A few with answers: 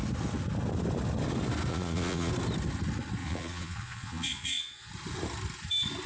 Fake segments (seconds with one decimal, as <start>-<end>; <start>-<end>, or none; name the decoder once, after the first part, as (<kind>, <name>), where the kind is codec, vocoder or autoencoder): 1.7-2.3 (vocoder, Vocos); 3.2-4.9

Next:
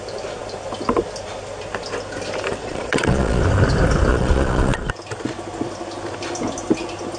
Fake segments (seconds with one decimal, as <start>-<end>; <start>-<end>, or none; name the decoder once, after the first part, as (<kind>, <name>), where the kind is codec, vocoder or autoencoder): 2.6-3.4 (vocoder, Vocos); 4.1-4.9

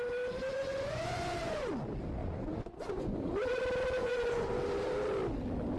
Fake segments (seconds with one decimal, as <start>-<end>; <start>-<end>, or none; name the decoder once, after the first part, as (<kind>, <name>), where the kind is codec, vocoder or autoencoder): 0.5-1.7 (vocoder, Vocos); 2.2-3.6; 4.0-4.6

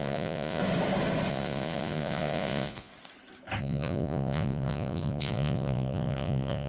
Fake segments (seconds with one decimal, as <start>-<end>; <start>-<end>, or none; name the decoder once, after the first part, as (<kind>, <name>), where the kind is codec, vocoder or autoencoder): 0.0-0.6 (vocoder, Vocos); 1.3-2.9; 3.6-6.7

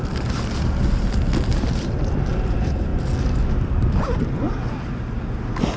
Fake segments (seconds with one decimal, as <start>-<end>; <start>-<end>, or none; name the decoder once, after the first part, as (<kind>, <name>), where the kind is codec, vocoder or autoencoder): none

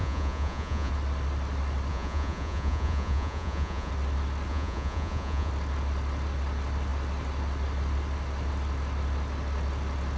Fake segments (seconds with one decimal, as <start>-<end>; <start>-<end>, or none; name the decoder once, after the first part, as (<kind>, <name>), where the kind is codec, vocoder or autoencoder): 0.0-0.9 (vocoder, Vocos); 1.9-3.9; 4.5-5.5

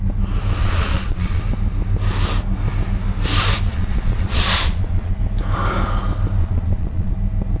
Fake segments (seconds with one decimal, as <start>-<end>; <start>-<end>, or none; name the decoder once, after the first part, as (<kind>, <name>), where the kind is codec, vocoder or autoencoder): 0.6-1.4 (vocoder, Vocos); 3.7-5.2; 6.4-7.1

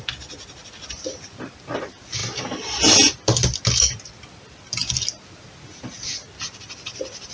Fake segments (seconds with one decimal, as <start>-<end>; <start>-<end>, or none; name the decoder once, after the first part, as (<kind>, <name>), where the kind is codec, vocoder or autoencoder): none